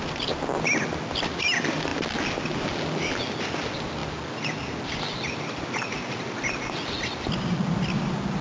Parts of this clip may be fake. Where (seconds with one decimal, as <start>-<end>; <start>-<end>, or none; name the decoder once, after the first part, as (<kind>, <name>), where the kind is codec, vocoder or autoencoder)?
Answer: none